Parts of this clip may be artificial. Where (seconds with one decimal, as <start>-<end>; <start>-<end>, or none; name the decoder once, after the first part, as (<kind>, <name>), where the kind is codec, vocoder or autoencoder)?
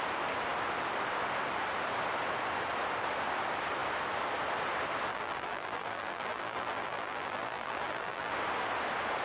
5.1-8.3 (vocoder, BigVGAN v2)